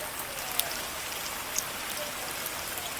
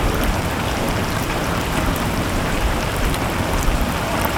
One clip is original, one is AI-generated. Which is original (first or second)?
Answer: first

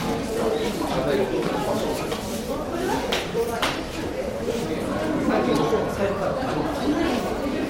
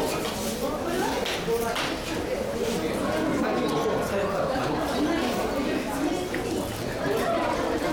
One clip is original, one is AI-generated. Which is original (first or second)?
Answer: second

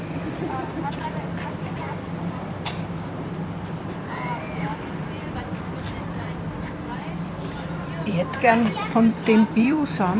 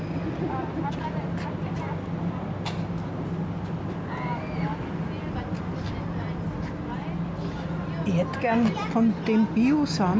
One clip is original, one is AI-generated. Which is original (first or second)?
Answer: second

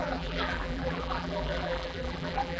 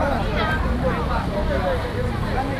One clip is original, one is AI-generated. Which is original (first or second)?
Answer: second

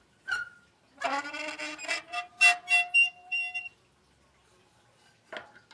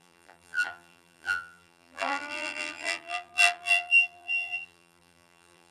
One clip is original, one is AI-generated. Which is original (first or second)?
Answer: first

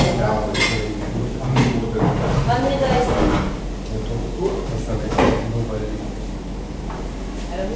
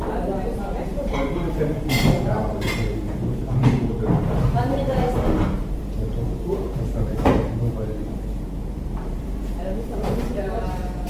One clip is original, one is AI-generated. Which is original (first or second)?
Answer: first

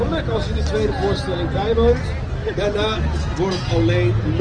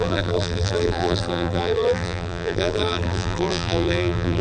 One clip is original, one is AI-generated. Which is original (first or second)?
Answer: first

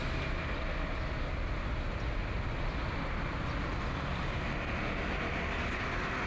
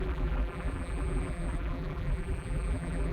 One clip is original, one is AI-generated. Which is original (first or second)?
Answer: first